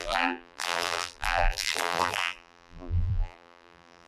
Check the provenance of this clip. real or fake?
fake